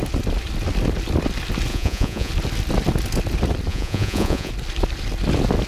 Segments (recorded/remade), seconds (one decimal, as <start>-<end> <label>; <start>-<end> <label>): 0.0-1.7 recorded; 1.7-2.3 remade; 2.3-3.7 recorded; 3.7-4.5 remade; 4.5-5.7 recorded